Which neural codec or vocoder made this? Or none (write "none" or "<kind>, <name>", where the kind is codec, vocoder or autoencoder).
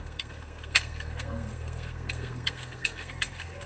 codec, SNAC